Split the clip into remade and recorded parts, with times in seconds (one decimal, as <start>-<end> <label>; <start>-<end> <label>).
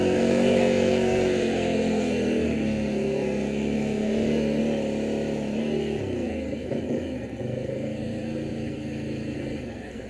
0.0-4.6 remade; 4.6-5.6 recorded; 5.6-10.1 remade